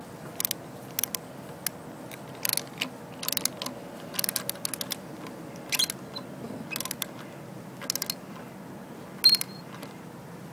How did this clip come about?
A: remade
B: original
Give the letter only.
B